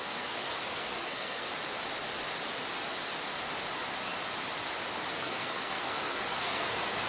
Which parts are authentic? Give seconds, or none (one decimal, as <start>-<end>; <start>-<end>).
1.5-5.1